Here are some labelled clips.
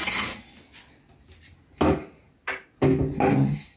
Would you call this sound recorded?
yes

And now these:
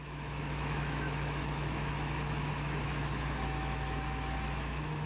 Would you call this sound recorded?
no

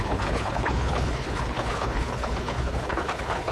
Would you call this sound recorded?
no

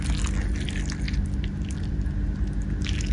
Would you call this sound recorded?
yes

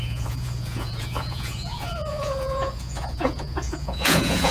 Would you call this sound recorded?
no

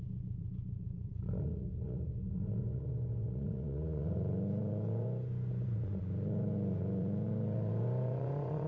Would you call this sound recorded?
no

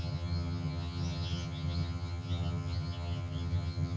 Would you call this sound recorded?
no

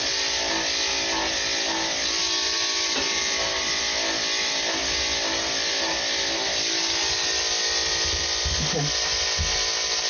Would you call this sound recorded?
yes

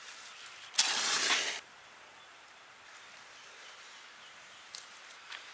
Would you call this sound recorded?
no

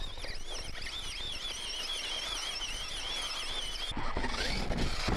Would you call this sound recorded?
yes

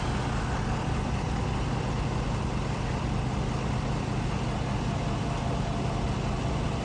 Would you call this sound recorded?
yes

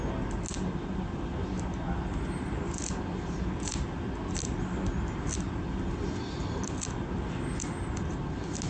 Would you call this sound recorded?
yes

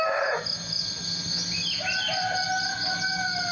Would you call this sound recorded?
yes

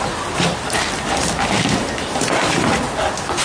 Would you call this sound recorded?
yes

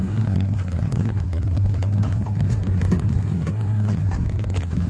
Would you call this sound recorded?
no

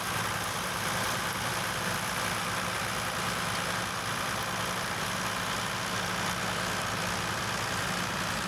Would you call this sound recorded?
yes